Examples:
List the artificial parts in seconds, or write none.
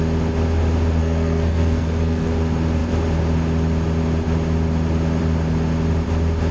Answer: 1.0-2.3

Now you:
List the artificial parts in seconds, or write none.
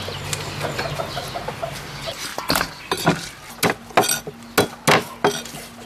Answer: none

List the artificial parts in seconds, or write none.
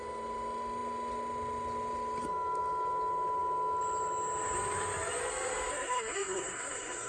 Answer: 5.7-7.1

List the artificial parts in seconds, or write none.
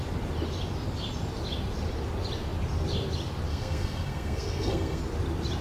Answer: 3.5-5.0